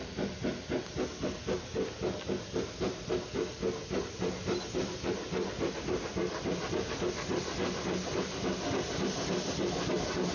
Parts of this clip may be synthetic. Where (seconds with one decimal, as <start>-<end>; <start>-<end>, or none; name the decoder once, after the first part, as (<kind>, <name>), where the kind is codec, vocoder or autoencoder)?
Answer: none